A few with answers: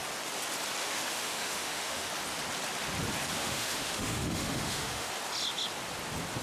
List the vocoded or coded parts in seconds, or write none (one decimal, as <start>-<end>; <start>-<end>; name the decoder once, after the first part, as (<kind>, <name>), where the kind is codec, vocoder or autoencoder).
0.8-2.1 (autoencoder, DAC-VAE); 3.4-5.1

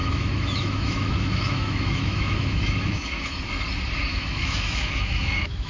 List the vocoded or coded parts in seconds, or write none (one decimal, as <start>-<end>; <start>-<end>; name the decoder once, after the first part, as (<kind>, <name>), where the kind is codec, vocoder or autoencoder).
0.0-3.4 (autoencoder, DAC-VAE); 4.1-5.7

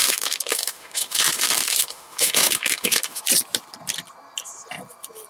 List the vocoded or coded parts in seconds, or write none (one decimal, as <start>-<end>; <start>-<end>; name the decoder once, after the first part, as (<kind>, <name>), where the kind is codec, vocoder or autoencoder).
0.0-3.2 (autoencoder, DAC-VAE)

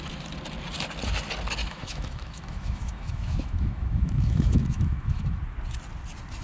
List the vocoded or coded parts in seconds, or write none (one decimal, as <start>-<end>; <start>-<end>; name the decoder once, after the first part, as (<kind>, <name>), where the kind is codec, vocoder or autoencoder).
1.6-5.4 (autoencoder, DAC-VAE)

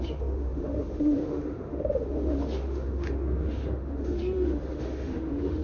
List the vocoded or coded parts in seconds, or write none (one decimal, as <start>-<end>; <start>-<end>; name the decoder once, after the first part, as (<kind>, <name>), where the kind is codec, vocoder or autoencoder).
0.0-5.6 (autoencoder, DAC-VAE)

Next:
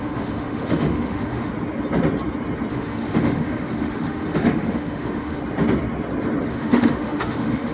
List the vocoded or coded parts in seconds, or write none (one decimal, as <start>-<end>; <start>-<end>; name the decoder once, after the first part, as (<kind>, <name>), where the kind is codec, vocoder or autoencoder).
0.0-1.5 (autoencoder, DAC-VAE); 2.7-5.4; 6.5-7.7